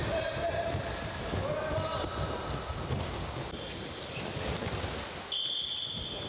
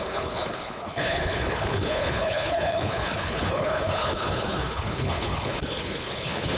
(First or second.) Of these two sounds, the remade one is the second